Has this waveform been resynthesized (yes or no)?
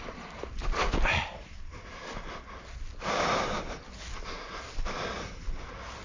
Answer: no